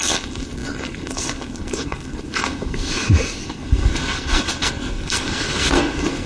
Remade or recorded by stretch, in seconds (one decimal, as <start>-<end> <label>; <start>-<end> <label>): 0.0-6.3 remade